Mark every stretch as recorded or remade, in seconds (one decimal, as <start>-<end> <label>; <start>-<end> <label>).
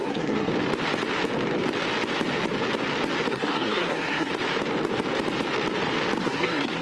0.0-0.5 remade; 0.5-3.3 recorded; 3.3-4.3 remade; 4.3-6.2 recorded; 6.2-6.8 remade